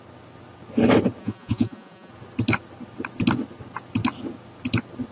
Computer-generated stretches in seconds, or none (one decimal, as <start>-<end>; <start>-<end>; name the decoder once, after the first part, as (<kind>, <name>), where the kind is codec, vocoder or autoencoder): 1.2-2.1 (vocoder, Vocos)

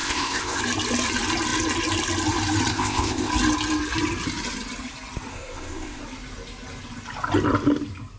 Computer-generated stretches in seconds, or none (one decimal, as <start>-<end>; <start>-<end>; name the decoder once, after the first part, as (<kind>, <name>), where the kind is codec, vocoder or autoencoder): 0.0-0.6 (codec, ZipCodec); 2.7-3.3; 5.3-6.0

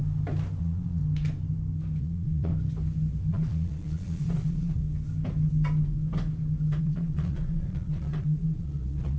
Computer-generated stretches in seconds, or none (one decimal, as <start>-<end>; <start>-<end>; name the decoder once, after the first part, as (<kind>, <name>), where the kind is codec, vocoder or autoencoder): 0.6-1.0 (vocoder, Vocos); 2.0-2.5; 3.3-4.8; 6.8-9.2

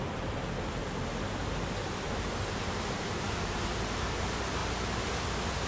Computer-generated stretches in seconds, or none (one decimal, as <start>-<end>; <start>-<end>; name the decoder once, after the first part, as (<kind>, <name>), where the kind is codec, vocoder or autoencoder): 0.0-0.8 (vocoder, BigVGAN v2); 2.4-4.6

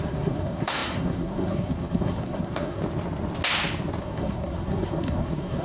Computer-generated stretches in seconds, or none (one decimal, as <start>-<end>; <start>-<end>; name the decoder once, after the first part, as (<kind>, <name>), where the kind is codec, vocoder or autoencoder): 0.0-2.8 (codec, SNAC); 4.0-5.6

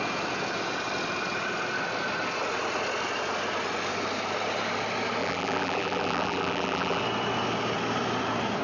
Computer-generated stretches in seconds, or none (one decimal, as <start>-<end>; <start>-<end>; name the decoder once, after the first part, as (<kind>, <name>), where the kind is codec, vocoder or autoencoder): 5.2-7.0 (vocoder, BigVGAN v2)

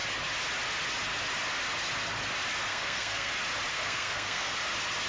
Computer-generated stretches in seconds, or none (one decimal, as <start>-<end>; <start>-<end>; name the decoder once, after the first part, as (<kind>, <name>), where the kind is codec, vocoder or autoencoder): 2.7-3.3 (codec, SNAC); 3.7-4.6

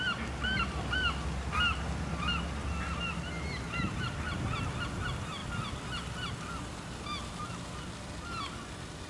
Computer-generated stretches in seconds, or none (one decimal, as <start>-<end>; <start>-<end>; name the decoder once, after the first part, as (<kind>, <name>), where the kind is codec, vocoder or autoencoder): none